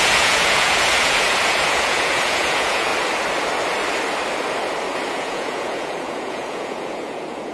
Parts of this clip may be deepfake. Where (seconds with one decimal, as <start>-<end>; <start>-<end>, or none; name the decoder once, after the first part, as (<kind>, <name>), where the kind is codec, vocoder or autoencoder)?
0.0-2.9 (vocoder, Vocos); 5.1-7.5

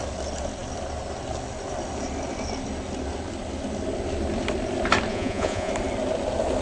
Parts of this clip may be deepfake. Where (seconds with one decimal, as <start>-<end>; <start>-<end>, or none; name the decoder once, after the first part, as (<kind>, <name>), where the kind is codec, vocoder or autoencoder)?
5.1-5.7 (vocoder, Vocos)